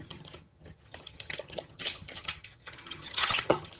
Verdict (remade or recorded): remade